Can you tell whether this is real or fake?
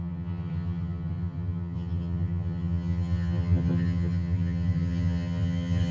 fake